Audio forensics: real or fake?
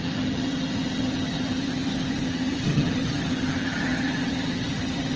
fake